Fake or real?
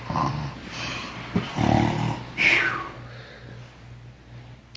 real